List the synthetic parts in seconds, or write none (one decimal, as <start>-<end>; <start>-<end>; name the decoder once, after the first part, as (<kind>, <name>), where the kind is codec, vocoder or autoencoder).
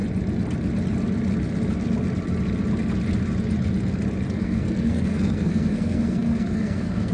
4.3-7.1 (codec, SNAC)